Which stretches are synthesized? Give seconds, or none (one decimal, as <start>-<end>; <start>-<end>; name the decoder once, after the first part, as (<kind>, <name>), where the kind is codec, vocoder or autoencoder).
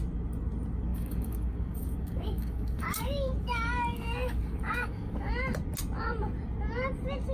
0.9-5.3 (codec, DAC)